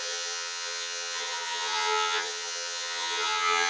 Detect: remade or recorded remade